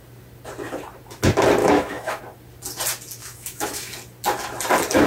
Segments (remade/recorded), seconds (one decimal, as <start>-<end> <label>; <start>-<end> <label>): 0.0-1.6 recorded; 1.6-2.2 remade; 2.2-3.2 recorded; 3.2-3.9 remade; 3.9-5.1 recorded

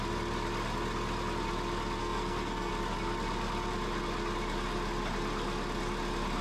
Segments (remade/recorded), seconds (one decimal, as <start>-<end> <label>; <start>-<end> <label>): 0.0-2.0 recorded; 2.0-2.7 remade; 2.7-6.4 recorded

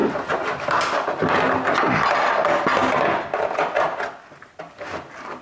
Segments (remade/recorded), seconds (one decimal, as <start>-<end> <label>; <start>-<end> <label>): 0.0-1.3 remade; 1.3-5.4 recorded

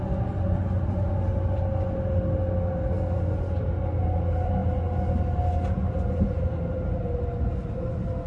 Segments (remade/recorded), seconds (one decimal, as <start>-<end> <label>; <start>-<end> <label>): 0.0-8.3 recorded

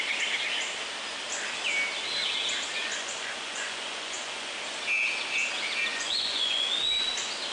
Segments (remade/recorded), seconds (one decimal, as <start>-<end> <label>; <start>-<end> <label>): 0.0-2.8 recorded; 2.8-4.5 remade; 4.5-5.9 recorded; 5.9-6.7 remade; 6.7-7.5 recorded

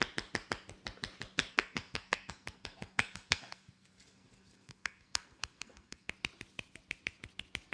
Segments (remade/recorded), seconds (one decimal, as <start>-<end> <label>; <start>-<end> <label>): 0.0-1.5 recorded; 1.5-6.1 remade; 6.1-7.7 recorded

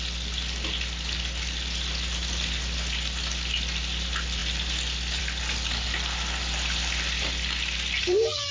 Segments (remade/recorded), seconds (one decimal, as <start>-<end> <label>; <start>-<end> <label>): 0.0-8.5 recorded